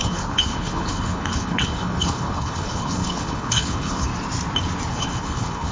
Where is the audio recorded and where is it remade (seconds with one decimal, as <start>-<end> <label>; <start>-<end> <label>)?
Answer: 0.0-4.1 remade; 4.1-4.9 recorded; 4.9-5.7 remade